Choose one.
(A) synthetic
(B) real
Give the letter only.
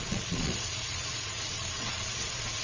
A